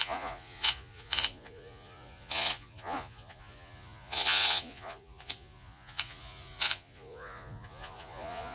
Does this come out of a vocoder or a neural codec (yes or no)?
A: yes